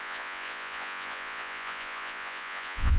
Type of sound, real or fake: fake